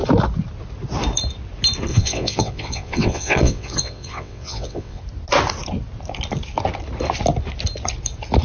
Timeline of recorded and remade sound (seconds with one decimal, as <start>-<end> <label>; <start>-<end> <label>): 0.0-1.9 recorded; 1.9-5.0 remade; 5.0-8.4 recorded